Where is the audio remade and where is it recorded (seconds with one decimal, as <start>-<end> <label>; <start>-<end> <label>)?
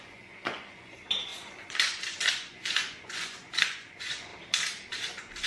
0.0-4.3 remade; 4.3-4.9 recorded; 4.9-5.5 remade